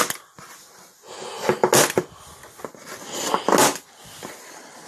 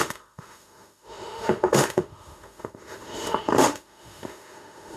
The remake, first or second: second